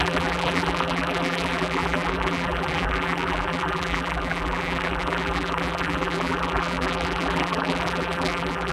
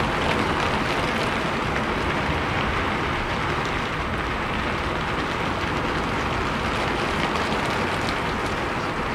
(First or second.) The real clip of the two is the second